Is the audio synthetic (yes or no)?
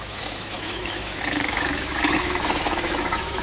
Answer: yes